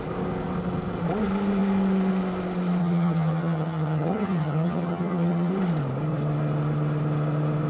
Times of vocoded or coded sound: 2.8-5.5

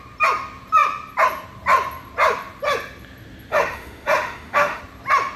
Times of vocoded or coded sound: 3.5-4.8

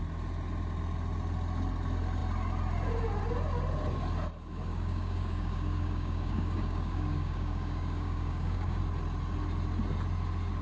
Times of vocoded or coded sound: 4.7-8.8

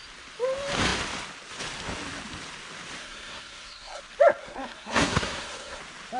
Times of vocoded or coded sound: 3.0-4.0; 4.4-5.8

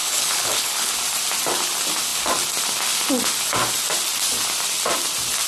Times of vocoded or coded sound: 0.0-0.9

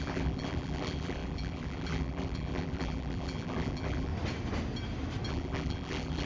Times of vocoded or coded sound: 0.0-4.1; 5.3-6.3

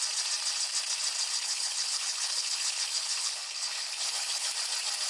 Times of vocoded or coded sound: 1.4-4.5

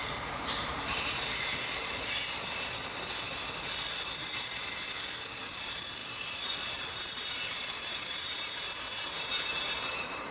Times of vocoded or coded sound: 0.0-1.8; 5.4-6.0; 6.6-10.3